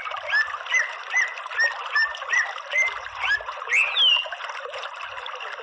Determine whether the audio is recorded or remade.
recorded